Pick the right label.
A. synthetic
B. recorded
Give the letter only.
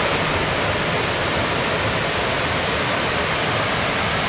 B